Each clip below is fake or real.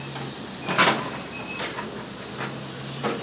real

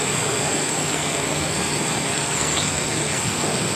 fake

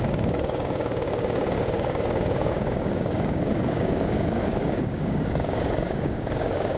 fake